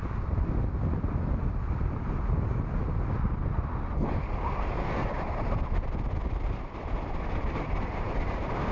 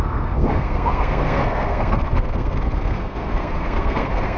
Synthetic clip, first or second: second